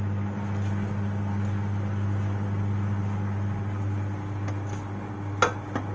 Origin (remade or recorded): recorded